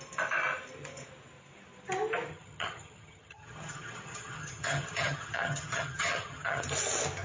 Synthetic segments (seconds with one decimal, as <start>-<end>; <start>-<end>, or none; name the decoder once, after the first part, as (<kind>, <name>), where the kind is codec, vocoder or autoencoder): 2.3-6.6 (vocoder, HiFi-GAN)